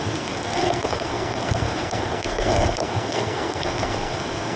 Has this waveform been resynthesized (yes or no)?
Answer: yes